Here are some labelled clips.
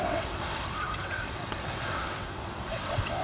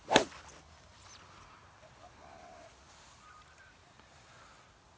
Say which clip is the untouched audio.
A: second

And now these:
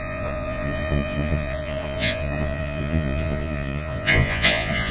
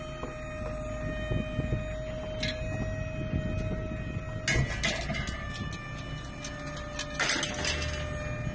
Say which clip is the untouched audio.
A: second